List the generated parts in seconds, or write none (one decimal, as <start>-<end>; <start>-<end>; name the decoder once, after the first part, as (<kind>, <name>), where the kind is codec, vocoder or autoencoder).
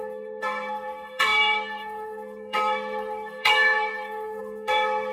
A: 0.0-5.1 (codec, SNAC)